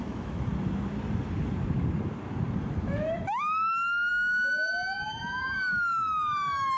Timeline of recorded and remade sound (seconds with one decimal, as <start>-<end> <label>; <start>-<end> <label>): 0.0-0.5 remade; 0.5-2.6 recorded; 2.6-6.8 remade